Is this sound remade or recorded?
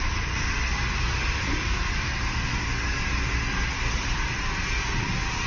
remade